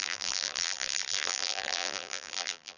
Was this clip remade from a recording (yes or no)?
yes